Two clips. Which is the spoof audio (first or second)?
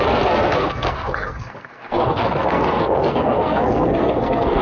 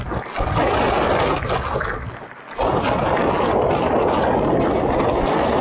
first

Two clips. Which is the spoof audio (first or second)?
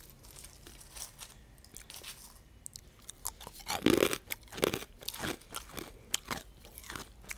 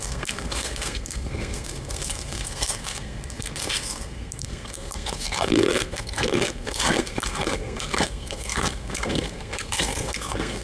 second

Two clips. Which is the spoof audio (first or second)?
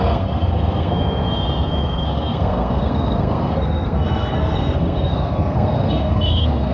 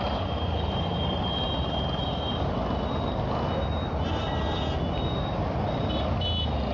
first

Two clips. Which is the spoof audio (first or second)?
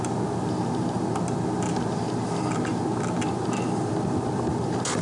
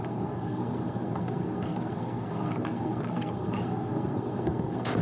second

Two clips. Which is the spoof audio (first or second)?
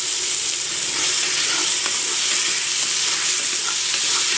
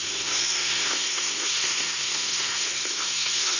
second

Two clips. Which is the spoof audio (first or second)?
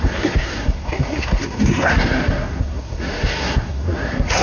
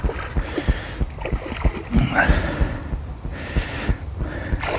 first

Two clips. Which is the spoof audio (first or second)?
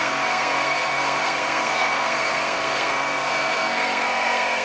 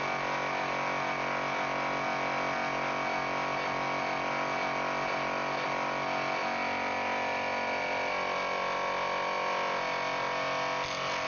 first